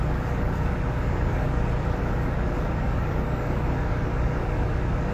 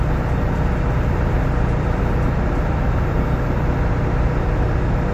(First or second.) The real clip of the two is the second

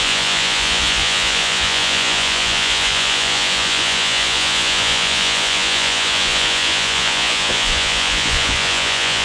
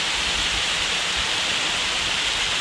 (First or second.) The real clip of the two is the second